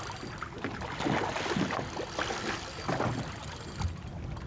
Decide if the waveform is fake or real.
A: real